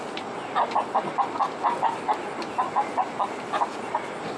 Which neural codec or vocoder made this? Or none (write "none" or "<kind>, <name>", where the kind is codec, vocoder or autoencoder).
none